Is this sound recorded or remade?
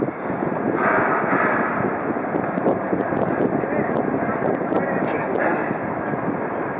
recorded